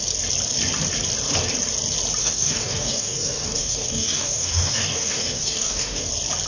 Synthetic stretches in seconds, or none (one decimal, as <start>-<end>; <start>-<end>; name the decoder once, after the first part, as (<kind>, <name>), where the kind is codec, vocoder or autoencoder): 2.2-6.1 (codec, DAC)